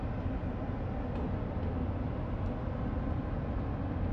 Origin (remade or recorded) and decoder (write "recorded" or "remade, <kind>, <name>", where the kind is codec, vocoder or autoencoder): recorded